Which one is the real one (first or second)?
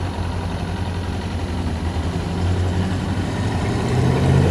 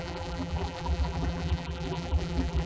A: first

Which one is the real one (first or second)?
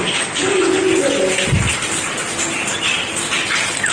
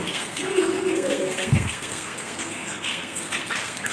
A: first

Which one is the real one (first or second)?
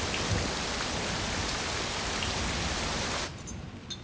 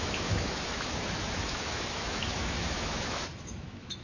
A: first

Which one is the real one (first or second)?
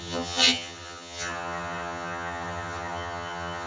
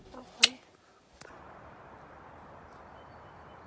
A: second